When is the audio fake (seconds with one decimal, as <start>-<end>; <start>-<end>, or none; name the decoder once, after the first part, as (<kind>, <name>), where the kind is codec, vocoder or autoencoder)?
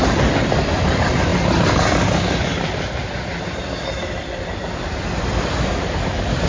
none